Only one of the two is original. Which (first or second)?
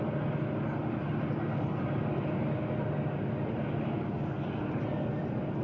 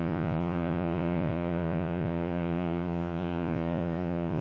first